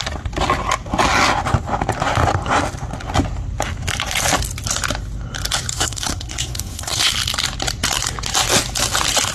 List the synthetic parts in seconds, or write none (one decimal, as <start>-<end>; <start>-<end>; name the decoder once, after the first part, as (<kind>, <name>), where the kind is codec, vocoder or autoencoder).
5.7-7.1 (codec, SNAC)

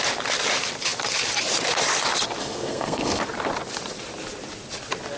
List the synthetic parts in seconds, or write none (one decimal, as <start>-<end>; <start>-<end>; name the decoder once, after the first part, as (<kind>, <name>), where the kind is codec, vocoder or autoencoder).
2.4-3.2 (codec, SNAC)

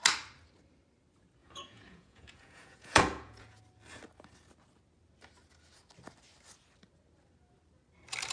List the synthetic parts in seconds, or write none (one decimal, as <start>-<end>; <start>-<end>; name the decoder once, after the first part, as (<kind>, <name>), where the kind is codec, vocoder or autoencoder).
1.4-3.6 (vocoder, Vocos)

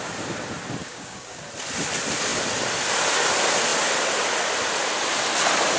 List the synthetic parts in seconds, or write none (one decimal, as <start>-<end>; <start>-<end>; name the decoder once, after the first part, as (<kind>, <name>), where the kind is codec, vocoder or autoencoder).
0.8-1.4 (codec, DAC)

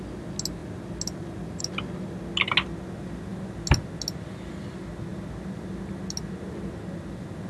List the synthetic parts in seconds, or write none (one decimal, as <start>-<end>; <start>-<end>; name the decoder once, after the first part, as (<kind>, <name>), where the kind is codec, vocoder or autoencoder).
none

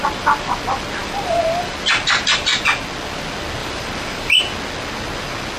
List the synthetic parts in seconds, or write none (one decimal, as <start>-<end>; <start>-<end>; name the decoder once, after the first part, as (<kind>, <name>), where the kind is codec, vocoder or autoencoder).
1.0-1.8 (vocoder, BigVGAN v2); 3.6-4.4